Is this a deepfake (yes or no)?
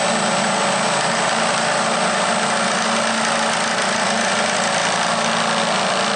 no